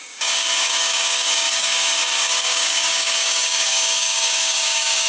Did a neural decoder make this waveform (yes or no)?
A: yes